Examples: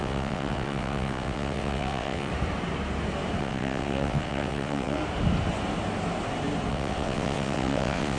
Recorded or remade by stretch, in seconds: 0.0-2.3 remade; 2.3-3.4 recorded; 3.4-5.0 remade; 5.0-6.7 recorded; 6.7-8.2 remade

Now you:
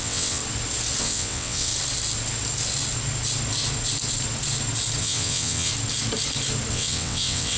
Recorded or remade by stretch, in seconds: 0.0-0.4 remade; 0.4-1.0 recorded; 1.0-1.7 remade; 1.7-5.0 recorded; 5.0-5.7 remade; 5.7-6.7 recorded; 6.7-7.6 remade

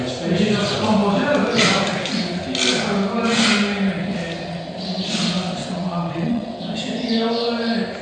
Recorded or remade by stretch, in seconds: 0.0-5.6 recorded; 5.6-6.6 remade; 6.6-8.0 recorded

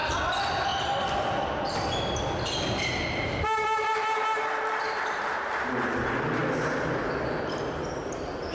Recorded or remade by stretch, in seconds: 0.0-8.5 recorded

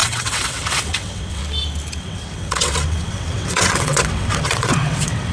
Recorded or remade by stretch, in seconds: 0.0-1.4 remade; 1.4-2.0 recorded; 2.0-5.3 remade

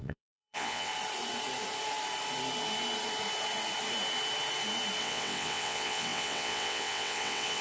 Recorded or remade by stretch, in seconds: 0.0-0.9 remade; 0.9-5.0 recorded; 5.0-7.6 remade

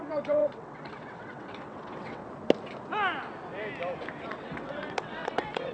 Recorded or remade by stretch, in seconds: 0.0-2.2 remade; 2.2-4.3 recorded; 4.3-5.7 remade